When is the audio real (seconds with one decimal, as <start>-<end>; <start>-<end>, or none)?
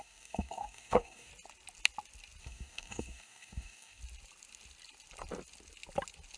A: 1.3-2.4; 4.0-6.4